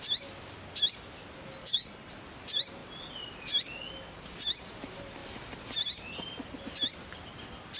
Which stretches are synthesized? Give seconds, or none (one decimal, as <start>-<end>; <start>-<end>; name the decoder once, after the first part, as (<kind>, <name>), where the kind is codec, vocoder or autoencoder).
1.6-2.1 (codec, HILCodec)